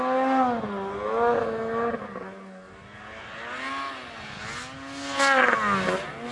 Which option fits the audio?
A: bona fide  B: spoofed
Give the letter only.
A